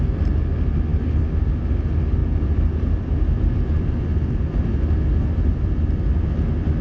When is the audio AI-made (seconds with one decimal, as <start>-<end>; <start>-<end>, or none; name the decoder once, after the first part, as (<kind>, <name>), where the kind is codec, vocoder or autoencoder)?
2.2-6.3 (vocoder, BigVGAN v2)

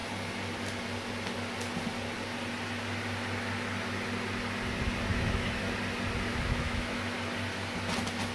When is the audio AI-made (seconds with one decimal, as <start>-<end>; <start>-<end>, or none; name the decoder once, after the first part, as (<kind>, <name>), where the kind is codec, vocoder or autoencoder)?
5.1-5.6 (autoencoder, DAC-VAE); 6.3-7.0